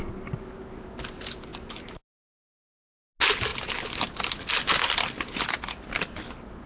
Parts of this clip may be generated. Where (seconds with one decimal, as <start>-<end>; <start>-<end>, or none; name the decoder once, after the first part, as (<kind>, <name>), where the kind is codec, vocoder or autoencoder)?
none